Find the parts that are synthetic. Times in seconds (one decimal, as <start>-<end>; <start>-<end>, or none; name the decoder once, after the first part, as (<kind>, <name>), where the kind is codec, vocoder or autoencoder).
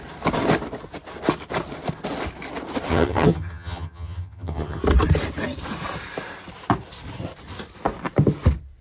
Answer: 2.9-4.8 (vocoder, HiFi-GAN)